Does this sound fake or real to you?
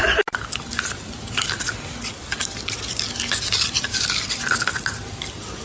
real